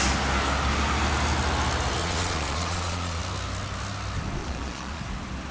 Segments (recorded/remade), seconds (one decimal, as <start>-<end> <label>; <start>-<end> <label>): 0.0-2.0 recorded; 2.0-3.2 remade; 3.2-4.4 recorded; 4.4-5.0 remade; 5.0-5.5 recorded